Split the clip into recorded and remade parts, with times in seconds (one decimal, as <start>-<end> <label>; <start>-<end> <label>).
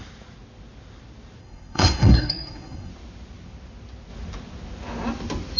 0.0-1.4 recorded; 1.4-2.9 remade; 2.9-5.6 recorded